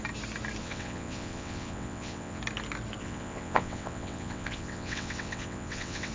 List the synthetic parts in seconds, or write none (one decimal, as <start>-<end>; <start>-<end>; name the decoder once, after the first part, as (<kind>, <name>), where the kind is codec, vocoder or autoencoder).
0.6-2.4 (vocoder, WaveNeXt); 3.0-6.1